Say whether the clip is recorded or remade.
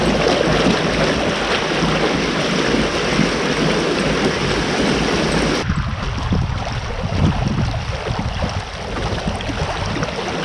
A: recorded